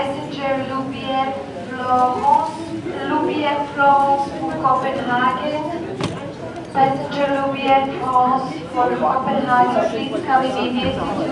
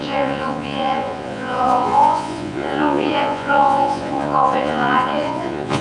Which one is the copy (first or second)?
second